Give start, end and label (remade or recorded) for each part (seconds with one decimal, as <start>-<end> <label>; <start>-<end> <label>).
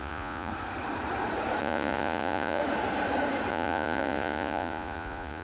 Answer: 0.0-0.5 remade; 0.5-1.6 recorded; 1.6-2.6 remade; 2.6-3.5 recorded; 3.5-5.4 remade